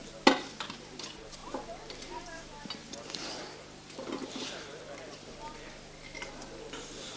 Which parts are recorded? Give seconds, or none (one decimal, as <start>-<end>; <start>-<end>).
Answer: 0.0-2.8; 4.4-7.2